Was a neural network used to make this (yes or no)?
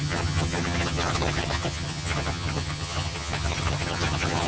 yes